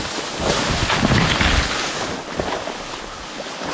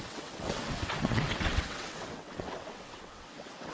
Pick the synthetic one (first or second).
second